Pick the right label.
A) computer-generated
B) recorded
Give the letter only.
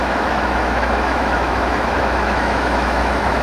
A